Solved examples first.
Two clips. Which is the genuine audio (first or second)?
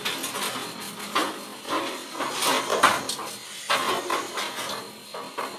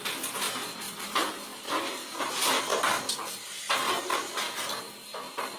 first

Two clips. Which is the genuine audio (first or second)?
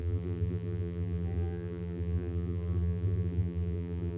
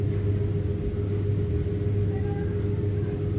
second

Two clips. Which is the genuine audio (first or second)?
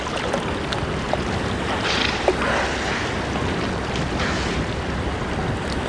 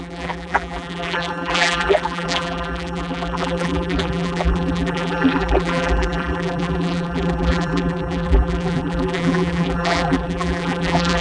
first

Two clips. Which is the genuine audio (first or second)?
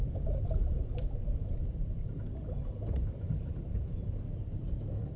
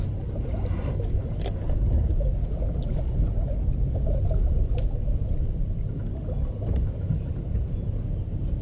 second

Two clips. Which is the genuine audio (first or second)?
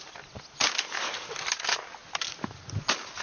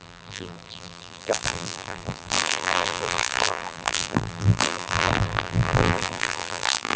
first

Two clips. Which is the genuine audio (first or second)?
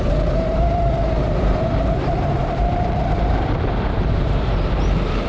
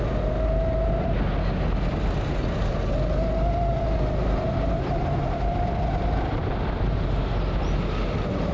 second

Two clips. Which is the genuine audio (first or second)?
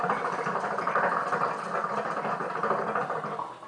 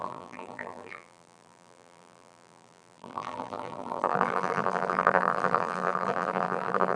first